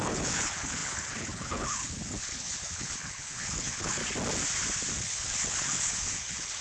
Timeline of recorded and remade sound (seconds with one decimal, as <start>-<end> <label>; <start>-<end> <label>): 0.0-4.0 remade; 4.0-5.0 recorded; 5.0-6.6 remade